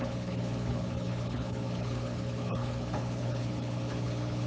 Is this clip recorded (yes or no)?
no